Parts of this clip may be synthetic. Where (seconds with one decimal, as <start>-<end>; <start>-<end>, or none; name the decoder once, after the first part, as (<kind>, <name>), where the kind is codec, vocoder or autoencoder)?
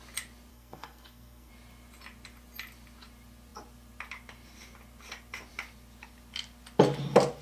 0.5-1.5 (codec, SNAC)